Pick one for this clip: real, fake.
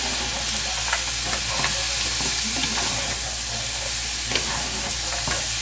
real